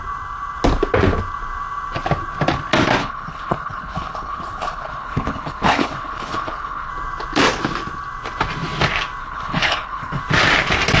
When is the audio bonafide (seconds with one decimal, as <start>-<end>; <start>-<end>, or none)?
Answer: 0.0-3.0; 6.9-9.2; 10.2-11.0